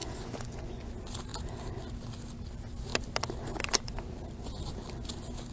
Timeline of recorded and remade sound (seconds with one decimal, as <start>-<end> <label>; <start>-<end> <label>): 0.0-0.9 remade; 0.9-5.5 recorded